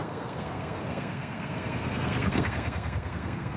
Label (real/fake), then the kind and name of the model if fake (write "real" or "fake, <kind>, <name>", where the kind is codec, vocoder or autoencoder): fake, codec, SNAC